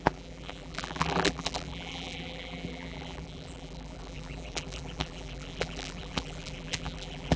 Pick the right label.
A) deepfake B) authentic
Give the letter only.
A